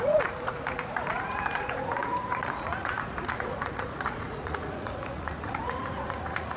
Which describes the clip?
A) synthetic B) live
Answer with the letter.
A